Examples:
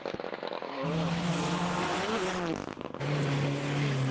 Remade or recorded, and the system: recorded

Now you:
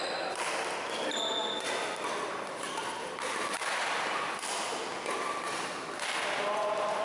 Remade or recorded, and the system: recorded